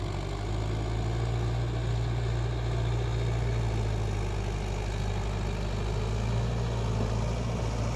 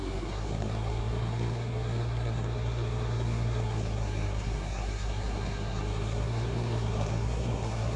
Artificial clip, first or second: second